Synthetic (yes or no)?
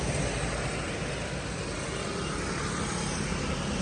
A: no